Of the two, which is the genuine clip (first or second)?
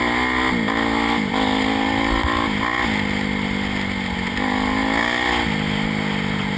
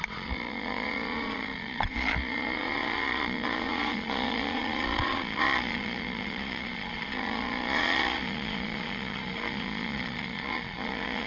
first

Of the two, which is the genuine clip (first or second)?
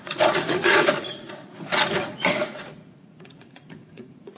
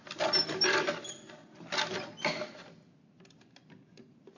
second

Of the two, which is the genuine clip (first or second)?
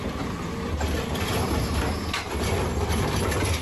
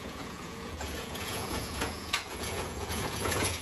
first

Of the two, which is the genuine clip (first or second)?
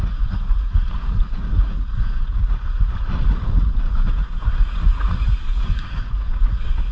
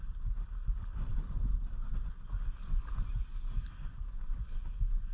second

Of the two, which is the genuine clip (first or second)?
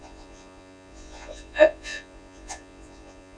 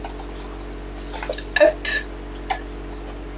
second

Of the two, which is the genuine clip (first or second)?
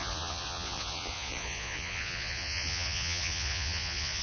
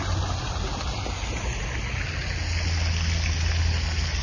second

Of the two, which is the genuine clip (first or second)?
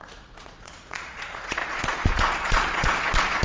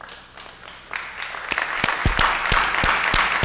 second